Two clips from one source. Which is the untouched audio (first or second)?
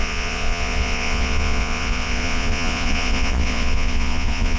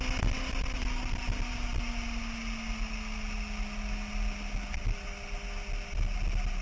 second